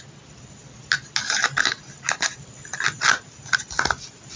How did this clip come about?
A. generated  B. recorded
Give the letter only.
B